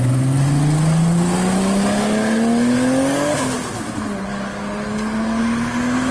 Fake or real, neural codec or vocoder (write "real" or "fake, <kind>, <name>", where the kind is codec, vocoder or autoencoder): real